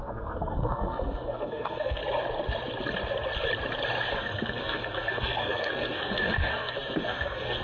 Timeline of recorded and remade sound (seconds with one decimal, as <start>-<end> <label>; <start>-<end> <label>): 0.0-2.0 remade; 2.0-4.2 recorded; 4.2-7.6 remade